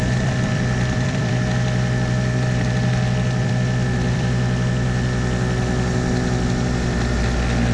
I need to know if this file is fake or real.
fake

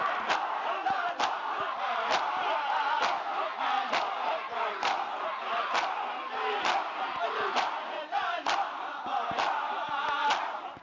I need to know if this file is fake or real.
real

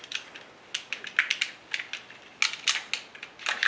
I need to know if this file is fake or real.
real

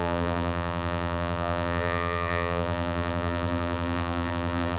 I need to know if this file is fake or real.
fake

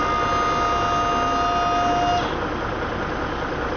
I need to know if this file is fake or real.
real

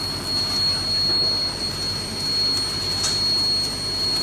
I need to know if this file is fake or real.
real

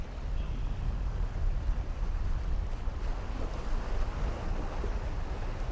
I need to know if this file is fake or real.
real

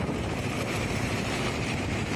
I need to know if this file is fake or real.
fake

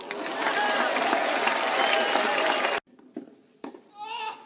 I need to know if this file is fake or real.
real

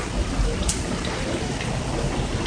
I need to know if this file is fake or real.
real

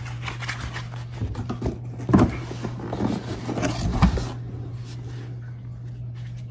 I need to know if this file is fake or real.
real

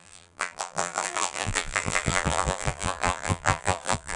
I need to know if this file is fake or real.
fake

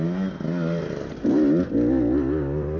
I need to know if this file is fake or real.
real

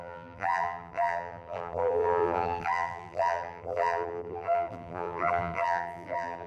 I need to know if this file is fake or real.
fake